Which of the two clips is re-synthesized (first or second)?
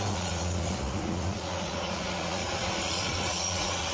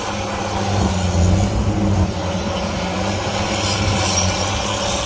first